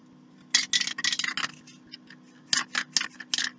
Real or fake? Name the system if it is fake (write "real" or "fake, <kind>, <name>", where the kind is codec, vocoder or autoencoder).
real